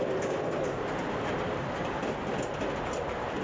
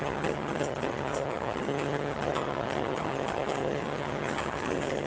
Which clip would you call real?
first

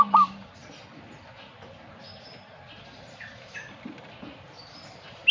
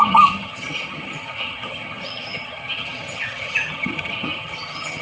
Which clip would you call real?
first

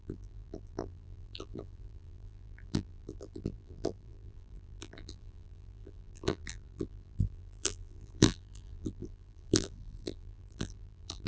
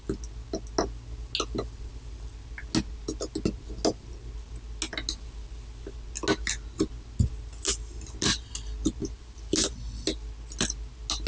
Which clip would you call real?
second